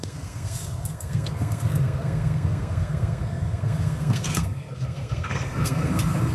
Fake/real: fake